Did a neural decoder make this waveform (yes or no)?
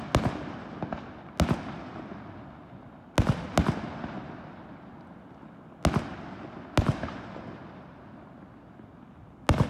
no